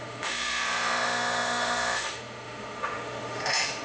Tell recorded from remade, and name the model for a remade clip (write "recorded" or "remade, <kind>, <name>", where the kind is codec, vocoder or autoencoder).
remade, autoencoder, DAC-VAE